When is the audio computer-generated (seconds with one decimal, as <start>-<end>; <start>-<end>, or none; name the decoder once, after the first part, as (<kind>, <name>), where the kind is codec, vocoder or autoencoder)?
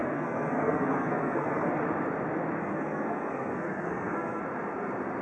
0.0-1.7 (codec, SNAC); 2.6-4.4